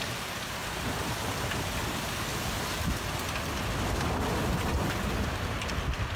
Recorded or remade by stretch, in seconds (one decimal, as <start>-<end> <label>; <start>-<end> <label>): 0.0-0.6 recorded; 0.6-1.7 remade; 1.7-4.7 recorded; 4.7-5.7 remade; 5.7-6.2 recorded

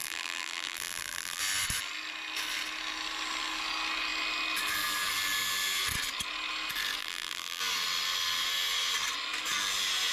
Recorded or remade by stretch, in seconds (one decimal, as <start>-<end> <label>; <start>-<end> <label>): 0.0-1.4 remade; 1.4-7.0 recorded; 7.0-7.6 remade; 7.6-10.1 recorded

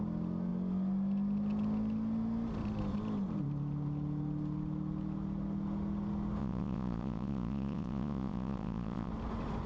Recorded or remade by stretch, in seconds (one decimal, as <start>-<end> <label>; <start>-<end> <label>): 0.0-6.4 recorded; 6.4-9.1 remade; 9.1-9.7 recorded

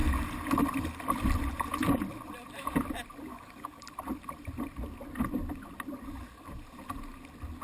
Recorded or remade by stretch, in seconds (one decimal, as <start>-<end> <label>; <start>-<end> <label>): 0.0-3.3 recorded; 3.3-3.8 remade; 3.8-7.6 recorded

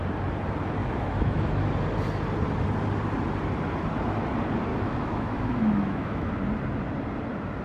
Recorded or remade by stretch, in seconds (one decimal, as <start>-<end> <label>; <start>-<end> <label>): 0.0-0.8 recorded; 0.8-1.7 remade; 1.7-4.7 recorded; 4.7-6.3 remade; 6.3-7.6 recorded

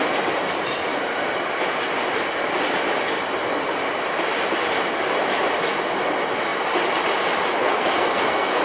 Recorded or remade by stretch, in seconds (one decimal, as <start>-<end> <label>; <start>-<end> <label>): 0.0-7.6 recorded; 7.6-8.6 remade

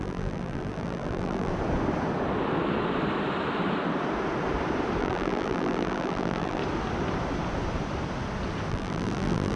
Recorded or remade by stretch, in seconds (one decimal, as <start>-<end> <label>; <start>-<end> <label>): 0.0-1.5 remade; 1.5-5.0 recorded; 5.0-6.6 remade; 6.6-8.7 recorded; 8.7-9.6 remade